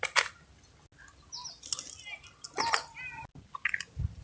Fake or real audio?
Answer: real